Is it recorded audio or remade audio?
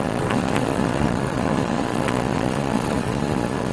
remade